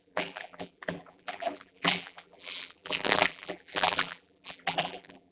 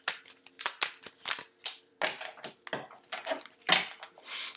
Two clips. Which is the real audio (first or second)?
second